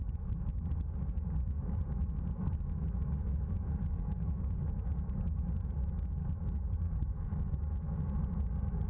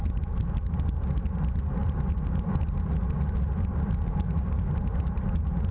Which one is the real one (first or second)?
second